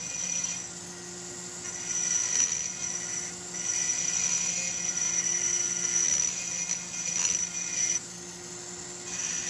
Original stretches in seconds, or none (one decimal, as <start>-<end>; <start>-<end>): 0.0-9.5